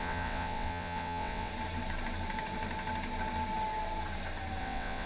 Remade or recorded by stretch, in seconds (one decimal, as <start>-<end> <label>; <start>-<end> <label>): 0.0-1.5 remade; 1.5-4.6 recorded; 4.6-5.1 remade